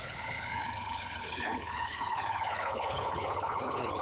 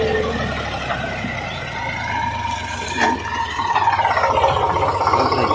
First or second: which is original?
second